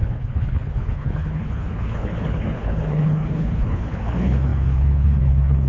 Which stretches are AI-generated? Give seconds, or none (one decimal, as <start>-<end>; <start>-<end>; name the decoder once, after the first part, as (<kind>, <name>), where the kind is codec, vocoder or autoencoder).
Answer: 0.0-5.7 (codec, HILCodec)